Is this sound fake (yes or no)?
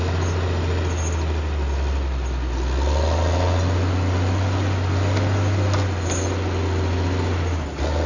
no